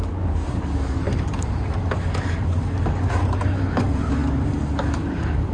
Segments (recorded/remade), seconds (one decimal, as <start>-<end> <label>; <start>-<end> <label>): 0.0-1.0 remade; 1.0-1.8 recorded; 1.8-3.2 remade; 3.2-3.7 recorded; 3.7-5.5 remade